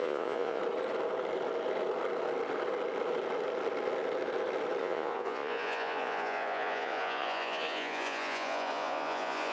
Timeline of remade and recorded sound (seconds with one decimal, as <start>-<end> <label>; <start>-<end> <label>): 0.0-0.6 remade; 0.6-4.8 recorded; 4.8-9.5 remade